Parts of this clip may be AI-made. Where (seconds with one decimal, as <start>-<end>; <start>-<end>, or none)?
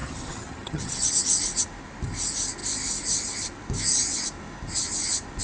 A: 0.0-1.1